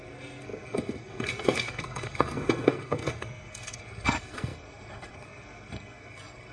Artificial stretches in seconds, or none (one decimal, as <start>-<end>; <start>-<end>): 0.0-6.5

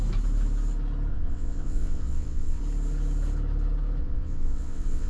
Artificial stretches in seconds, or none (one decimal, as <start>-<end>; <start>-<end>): 1.1-2.6; 4.0-5.1

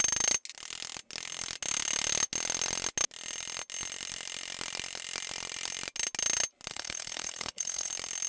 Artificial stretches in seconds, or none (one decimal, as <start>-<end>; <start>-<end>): 6.7-7.9

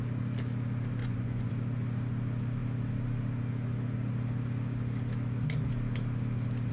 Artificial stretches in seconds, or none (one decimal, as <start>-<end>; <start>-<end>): 1.0-1.5

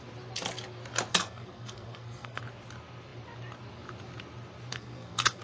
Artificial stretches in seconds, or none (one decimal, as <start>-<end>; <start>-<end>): 1.1-2.4; 4.7-5.4

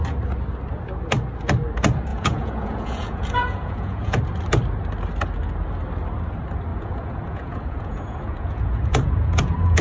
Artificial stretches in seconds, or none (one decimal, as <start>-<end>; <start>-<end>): 2.1-4.2; 6.7-9.8